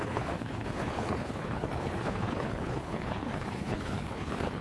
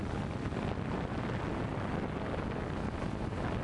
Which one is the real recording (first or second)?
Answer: second